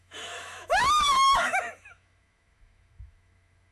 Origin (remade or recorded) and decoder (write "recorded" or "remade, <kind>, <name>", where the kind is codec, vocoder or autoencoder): remade, autoencoder, DAC-VAE